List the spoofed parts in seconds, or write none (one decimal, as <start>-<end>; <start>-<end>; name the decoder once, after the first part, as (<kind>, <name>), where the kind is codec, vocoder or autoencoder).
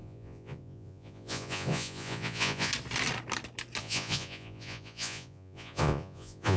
0.0-2.7 (vocoder, Vocos); 3.8-6.6